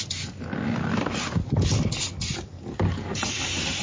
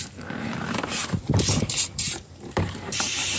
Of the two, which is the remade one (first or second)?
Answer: second